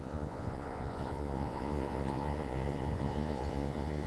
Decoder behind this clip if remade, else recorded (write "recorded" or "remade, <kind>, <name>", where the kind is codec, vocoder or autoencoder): remade, vocoder, Vocos